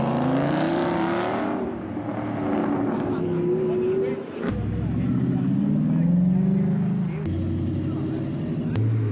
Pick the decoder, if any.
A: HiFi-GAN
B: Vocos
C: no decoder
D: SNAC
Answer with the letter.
C